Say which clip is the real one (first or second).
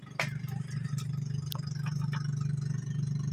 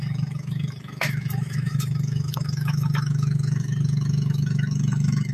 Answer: first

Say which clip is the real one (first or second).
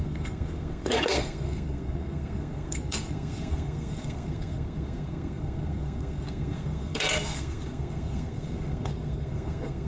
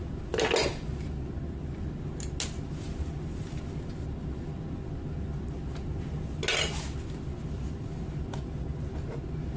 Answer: second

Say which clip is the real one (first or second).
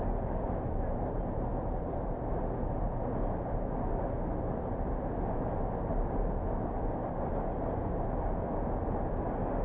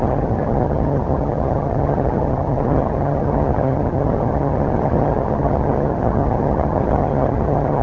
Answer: first